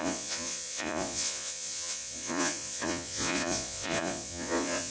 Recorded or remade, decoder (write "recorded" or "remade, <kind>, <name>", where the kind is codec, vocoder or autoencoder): remade, vocoder, Vocos